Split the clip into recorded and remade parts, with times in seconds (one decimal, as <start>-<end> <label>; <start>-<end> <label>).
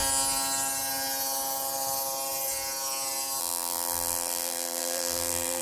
0.0-3.4 recorded; 3.4-5.6 remade